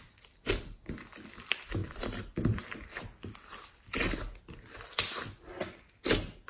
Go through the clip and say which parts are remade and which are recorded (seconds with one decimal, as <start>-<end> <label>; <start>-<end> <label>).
0.0-6.5 recorded